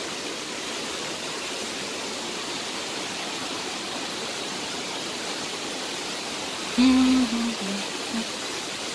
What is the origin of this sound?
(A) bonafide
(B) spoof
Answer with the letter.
B